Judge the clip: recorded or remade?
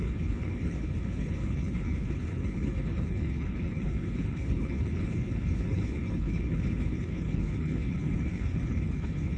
remade